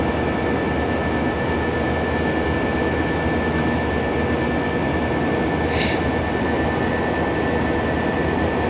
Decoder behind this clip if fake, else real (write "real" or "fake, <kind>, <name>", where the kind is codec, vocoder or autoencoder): real